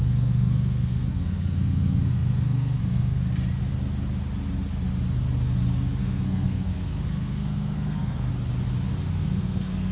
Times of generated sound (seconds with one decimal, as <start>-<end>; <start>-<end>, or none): 0.0-3.2; 6.0-8.3; 9.1-9.9

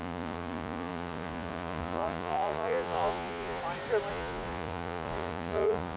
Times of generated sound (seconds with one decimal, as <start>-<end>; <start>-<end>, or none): 0.0-3.6; 4.1-6.0

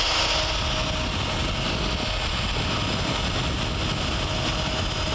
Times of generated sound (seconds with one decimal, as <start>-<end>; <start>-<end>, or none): 1.4-3.3